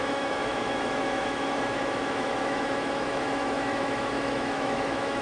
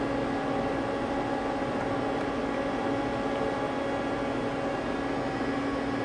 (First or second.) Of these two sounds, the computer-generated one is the first